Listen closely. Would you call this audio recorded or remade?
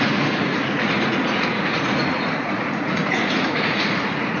remade